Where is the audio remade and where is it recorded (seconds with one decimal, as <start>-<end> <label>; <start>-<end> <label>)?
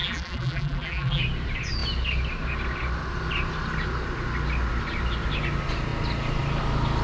0.0-1.2 remade; 1.2-7.0 recorded